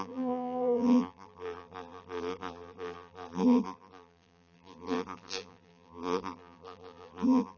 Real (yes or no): no